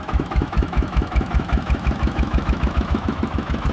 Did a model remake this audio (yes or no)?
yes